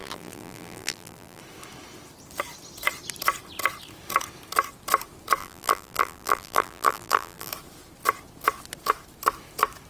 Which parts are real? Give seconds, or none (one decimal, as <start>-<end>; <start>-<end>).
1.4-5.4; 7.5-9.9